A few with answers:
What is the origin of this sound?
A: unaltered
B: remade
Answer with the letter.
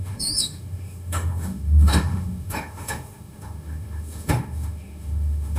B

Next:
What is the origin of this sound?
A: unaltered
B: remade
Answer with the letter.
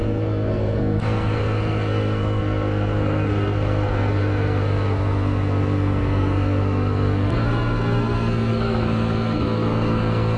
B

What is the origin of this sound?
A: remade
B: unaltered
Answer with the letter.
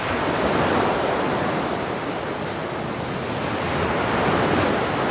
B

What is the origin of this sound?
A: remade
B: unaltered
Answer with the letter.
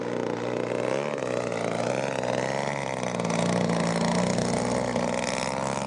B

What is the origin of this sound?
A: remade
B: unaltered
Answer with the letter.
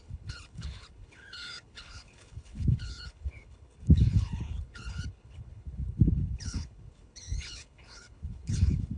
A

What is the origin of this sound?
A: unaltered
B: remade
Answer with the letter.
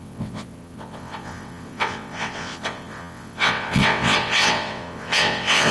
B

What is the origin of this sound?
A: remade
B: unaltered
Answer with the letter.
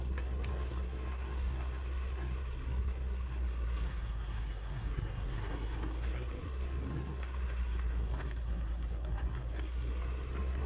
A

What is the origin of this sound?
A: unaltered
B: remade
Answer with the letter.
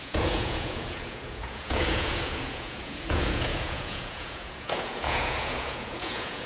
B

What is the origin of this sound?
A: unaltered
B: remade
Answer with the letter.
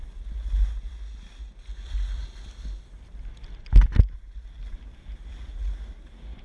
A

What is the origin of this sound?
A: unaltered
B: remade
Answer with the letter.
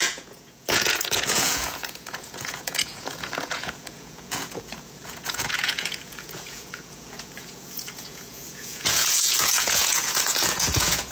B